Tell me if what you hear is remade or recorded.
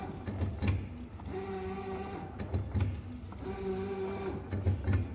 recorded